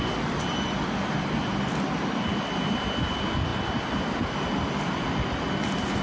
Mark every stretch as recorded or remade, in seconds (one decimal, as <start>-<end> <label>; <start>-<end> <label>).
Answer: 0.0-6.0 recorded